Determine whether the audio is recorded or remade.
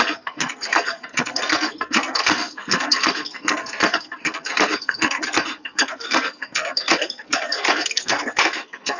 remade